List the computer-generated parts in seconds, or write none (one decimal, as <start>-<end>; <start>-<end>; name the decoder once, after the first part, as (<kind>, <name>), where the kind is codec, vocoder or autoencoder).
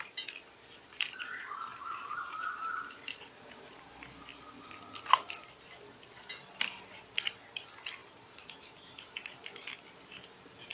1.7-3.9 (vocoder, BigVGAN v2); 8.0-8.7